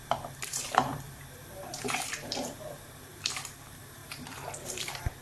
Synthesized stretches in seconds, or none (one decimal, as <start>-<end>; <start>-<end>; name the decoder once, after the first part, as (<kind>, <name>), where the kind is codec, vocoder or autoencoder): 0.0-5.2 (vocoder, BigVGAN v2)